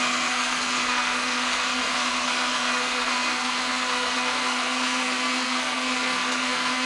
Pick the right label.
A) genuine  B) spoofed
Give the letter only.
B